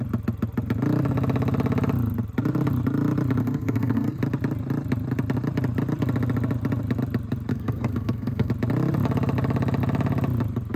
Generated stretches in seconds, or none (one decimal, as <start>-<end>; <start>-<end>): 3.4-4.2; 7.5-8.5